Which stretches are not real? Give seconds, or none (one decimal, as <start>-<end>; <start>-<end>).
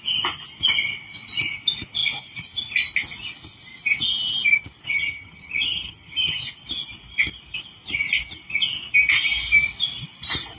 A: 4.9-6.4